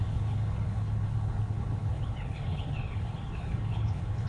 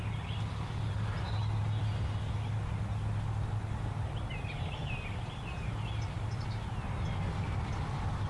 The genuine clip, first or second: second